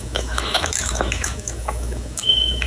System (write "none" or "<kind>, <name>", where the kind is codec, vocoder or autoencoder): autoencoder, DAC-VAE